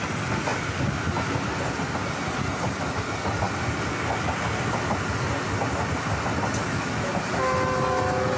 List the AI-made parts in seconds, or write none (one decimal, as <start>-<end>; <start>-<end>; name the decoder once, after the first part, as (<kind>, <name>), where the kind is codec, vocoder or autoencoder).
6.6-7.1 (autoencoder, DAC-VAE)